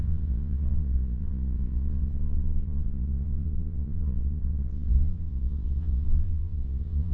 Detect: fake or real fake